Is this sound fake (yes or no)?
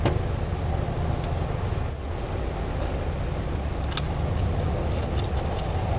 no